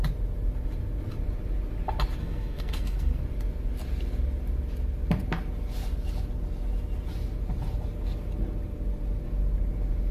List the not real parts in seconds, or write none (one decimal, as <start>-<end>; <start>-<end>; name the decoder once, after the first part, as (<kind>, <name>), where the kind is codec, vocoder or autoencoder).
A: 2.2-3.2 (codec, SNAC)